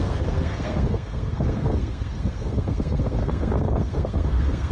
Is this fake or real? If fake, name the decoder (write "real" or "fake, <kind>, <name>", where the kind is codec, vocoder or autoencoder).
fake, codec, SNAC